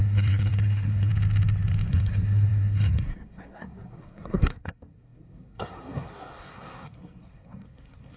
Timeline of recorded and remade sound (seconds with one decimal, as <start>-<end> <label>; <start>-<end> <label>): 0.0-1.1 remade; 1.1-1.9 recorded; 1.9-8.2 remade